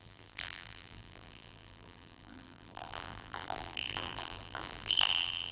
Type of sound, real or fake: fake